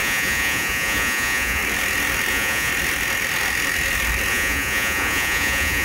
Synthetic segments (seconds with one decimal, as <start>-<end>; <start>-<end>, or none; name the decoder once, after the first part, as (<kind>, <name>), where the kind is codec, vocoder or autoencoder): 0.0-1.6 (vocoder, Vocos); 2.3-2.7; 4.3-5.8